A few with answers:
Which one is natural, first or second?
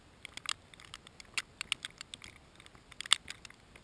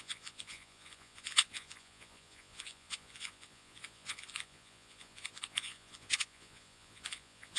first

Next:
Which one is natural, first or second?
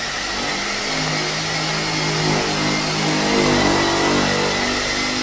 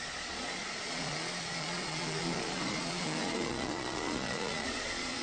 first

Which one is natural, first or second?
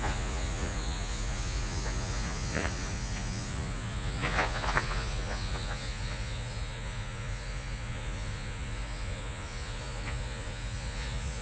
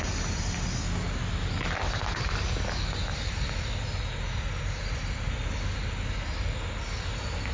second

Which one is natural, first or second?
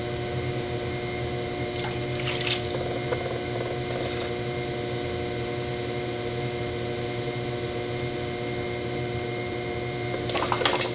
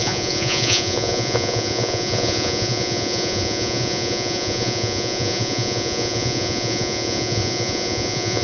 first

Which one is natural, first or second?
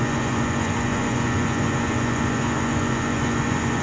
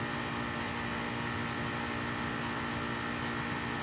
second